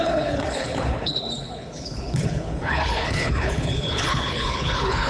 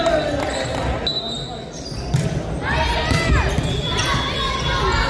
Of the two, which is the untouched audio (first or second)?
second